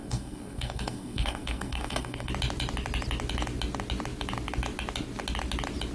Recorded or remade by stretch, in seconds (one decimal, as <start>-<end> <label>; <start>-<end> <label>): 0.0-2.3 remade; 2.3-5.9 recorded